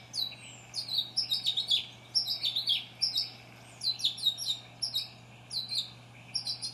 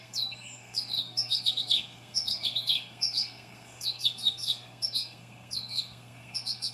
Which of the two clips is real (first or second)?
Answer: first